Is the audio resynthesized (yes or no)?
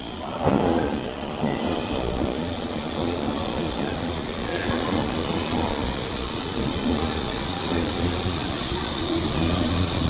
yes